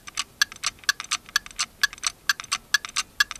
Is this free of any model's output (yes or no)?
yes